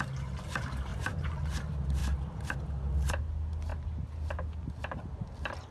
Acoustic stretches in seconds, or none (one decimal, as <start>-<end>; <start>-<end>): 0.0-0.9; 1.6-5.7